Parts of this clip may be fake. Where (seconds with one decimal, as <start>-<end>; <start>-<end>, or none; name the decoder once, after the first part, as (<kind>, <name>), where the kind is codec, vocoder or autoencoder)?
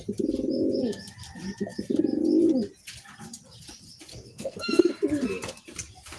4.1-4.9 (codec, SNAC)